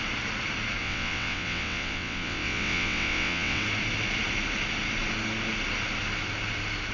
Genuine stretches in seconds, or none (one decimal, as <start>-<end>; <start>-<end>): 0.0-0.8; 3.6-6.9